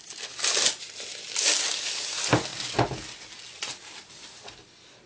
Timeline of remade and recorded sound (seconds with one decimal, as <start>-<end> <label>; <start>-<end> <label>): 0.0-5.1 recorded